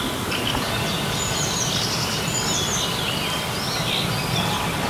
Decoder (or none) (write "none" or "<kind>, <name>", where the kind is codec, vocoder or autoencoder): none